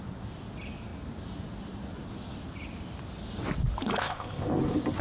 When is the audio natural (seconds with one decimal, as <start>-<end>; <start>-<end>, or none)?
0.0-4.0; 4.6-5.0